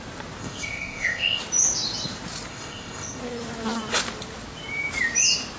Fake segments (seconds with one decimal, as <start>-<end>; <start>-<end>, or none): 0.4-1.4; 2.5-3.2